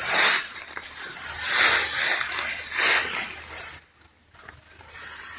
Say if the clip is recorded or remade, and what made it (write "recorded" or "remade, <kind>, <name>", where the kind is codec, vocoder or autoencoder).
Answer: recorded